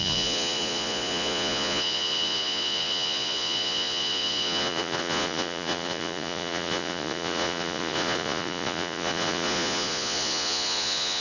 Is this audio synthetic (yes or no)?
yes